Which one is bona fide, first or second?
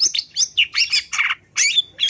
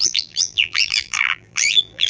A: first